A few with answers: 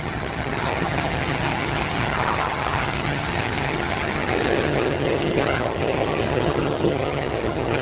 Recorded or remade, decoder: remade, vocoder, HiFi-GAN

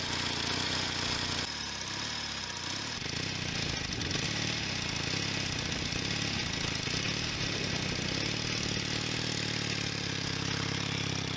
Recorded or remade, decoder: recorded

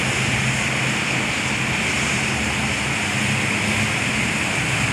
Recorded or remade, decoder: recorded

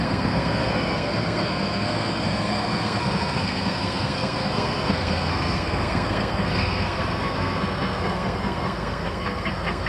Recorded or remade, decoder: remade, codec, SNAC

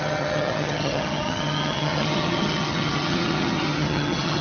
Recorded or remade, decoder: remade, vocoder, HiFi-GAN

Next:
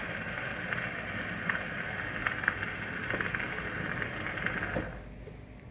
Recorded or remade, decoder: recorded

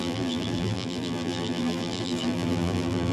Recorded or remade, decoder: remade, vocoder, BigVGAN v2